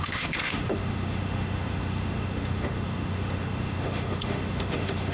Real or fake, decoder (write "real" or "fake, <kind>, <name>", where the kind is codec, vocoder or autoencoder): fake, autoencoder, DAC-VAE